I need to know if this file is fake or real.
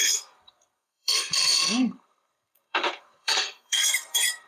fake